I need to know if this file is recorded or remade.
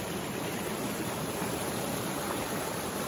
remade